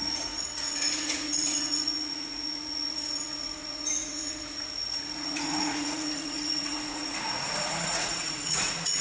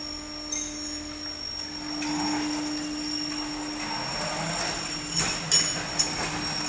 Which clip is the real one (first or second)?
second